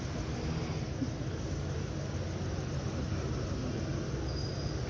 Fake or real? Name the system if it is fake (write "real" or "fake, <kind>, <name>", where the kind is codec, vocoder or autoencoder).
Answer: real